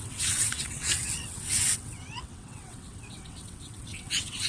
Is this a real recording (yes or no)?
no